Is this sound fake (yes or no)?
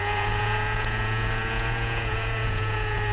yes